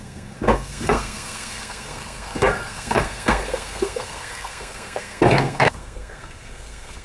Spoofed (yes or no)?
yes